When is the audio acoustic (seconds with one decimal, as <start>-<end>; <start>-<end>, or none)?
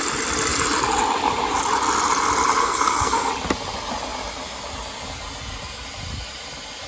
0.0-2.6; 3.3-6.9